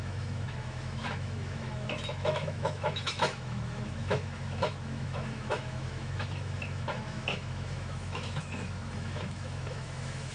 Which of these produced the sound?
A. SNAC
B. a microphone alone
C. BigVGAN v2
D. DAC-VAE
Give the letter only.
D